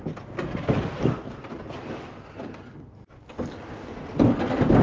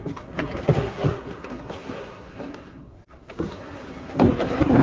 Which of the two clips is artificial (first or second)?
second